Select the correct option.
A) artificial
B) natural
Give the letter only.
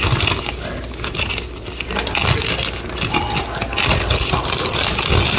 B